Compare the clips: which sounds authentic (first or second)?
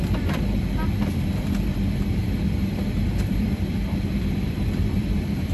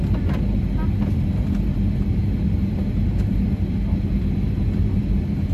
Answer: second